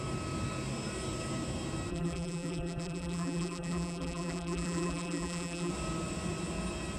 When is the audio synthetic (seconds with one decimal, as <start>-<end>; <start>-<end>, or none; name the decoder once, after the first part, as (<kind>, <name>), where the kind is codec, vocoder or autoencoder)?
1.9-5.7 (vocoder, BigVGAN v2)

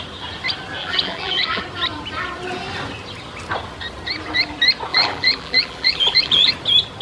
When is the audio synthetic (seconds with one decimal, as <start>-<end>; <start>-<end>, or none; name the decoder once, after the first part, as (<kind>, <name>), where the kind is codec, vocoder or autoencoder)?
0.8-1.6 (vocoder, BigVGAN v2); 4.9-6.5

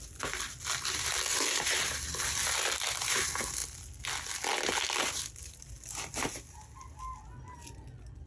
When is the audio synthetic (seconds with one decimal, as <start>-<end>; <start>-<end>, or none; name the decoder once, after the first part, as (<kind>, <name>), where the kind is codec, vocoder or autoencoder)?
1.3-1.8 (vocoder, BigVGAN v2)

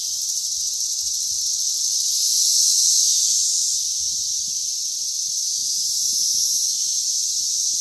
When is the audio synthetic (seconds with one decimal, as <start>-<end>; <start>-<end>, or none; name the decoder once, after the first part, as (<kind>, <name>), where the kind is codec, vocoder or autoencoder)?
none

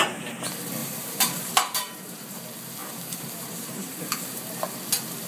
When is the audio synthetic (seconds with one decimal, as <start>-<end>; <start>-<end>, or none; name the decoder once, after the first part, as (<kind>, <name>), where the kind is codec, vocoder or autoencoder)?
0.8-2.4 (vocoder, BigVGAN v2); 2.8-4.5

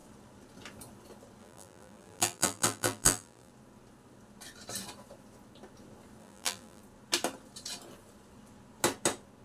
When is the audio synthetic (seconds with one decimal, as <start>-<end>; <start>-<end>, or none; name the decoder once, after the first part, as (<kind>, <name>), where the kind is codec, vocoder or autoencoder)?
1.4-3.5 (vocoder, BigVGAN v2); 6.2-6.8

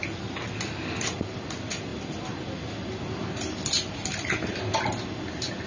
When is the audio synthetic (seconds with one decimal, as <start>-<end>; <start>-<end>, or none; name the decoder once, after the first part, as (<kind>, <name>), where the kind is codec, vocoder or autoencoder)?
none